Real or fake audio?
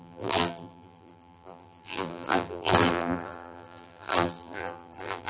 fake